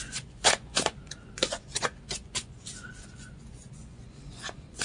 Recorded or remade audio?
remade